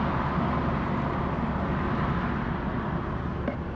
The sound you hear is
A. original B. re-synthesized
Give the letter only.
A